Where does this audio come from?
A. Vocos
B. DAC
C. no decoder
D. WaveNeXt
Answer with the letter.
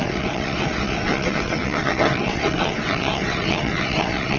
D